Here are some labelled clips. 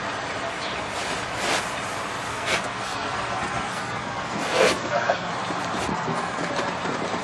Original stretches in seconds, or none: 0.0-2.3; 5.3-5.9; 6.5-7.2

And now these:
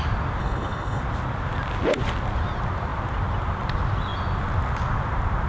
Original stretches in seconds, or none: 0.0-0.4; 1.0-5.5

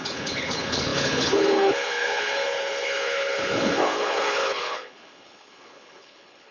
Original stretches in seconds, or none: none

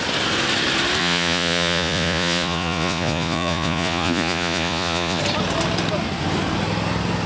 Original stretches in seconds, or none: 0.0-1.0; 5.2-7.3

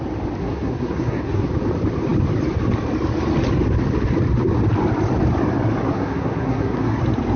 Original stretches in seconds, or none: 0.0-0.4; 1.5-5.8; 7.0-7.4